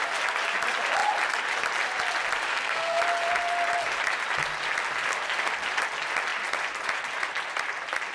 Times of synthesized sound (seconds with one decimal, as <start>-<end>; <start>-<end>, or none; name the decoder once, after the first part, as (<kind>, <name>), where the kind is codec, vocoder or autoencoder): 2.5-3.0 (codec, SNAC)